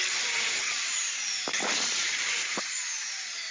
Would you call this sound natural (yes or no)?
no